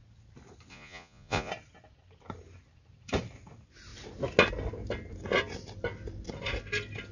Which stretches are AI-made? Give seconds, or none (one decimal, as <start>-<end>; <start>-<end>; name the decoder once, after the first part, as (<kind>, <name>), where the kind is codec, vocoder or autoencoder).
0.7-1.5 (vocoder, Vocos)